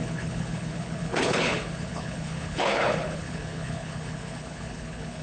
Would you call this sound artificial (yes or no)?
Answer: yes